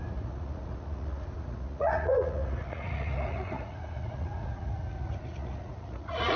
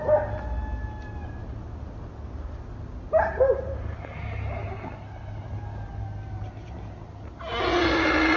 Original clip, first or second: second